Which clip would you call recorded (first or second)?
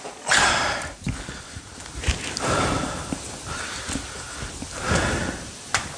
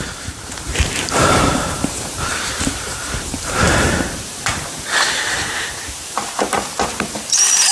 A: first